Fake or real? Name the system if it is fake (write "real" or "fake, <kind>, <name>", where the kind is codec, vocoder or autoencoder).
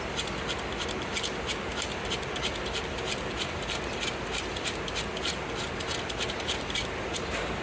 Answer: real